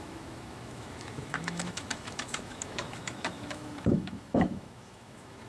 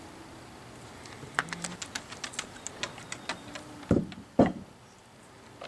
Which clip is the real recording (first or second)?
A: second